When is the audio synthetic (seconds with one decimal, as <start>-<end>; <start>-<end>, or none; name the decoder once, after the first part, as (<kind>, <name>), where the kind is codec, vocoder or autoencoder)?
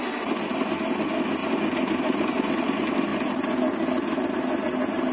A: none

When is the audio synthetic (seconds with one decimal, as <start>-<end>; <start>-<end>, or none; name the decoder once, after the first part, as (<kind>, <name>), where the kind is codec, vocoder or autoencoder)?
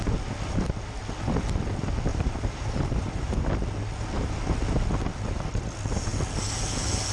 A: 2.1-3.4 (vocoder, BigVGAN v2)